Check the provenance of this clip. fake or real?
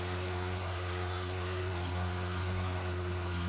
fake